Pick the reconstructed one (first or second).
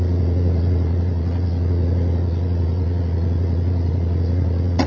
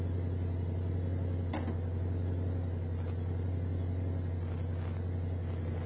first